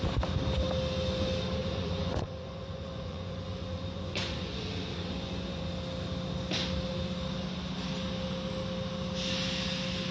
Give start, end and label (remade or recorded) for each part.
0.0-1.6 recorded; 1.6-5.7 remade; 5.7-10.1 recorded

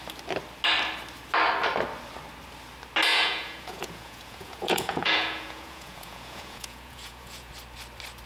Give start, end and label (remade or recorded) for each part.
0.0-3.1 recorded; 3.1-7.5 remade; 7.5-8.3 recorded